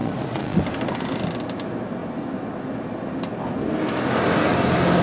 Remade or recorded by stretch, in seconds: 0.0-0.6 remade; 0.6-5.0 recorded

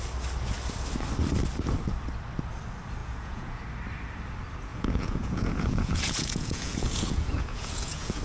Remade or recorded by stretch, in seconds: 0.0-3.0 recorded; 3.0-3.6 remade; 3.6-4.7 recorded; 4.7-8.2 remade

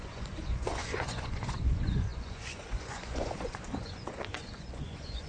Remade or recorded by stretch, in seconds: 0.0-5.3 remade

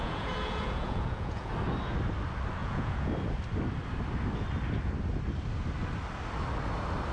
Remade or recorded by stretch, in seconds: 0.0-1.5 remade; 1.5-2.6 recorded; 2.6-3.1 remade; 3.1-7.1 recorded

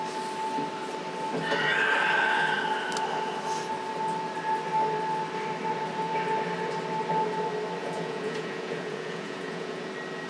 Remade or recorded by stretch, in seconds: 0.0-7.8 recorded; 7.8-9.9 remade; 9.9-10.3 recorded